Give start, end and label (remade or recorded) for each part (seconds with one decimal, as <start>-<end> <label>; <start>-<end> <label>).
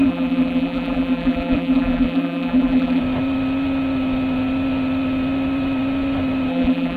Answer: 0.0-3.0 remade; 3.0-6.5 recorded; 6.5-7.0 remade